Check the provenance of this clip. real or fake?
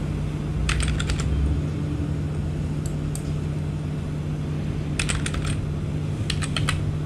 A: real